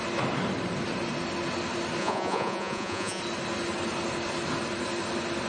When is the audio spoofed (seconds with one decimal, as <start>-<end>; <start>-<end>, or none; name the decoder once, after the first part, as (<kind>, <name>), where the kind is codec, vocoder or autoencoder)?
2.0-3.2 (vocoder, Vocos)

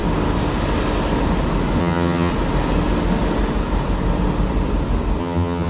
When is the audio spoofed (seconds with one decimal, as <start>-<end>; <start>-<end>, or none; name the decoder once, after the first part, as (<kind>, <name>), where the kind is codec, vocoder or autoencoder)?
1.8-2.3 (vocoder, HiFi-GAN); 5.2-5.7